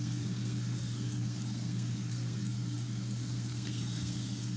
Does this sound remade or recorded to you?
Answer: remade